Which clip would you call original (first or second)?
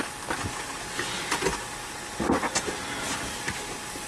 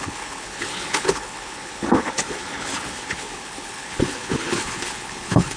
first